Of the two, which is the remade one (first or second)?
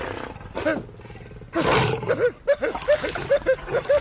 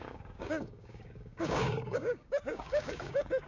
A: second